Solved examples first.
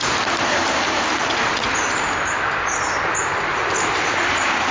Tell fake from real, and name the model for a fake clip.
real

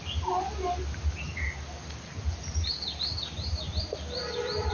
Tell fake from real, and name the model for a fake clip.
real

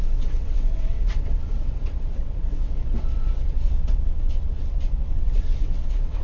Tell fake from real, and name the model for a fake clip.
fake, vocoder, WaveNeXt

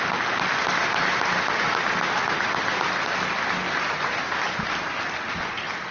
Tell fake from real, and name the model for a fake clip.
real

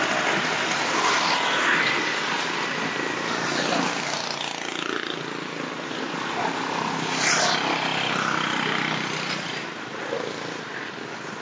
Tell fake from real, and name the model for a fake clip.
real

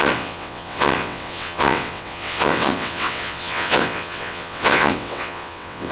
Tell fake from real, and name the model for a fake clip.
fake, vocoder, WaveNeXt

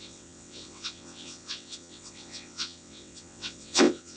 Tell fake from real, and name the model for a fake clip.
fake, vocoder, WaveNeXt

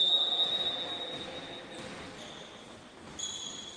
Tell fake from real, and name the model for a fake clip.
real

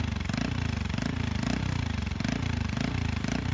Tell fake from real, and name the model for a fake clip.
real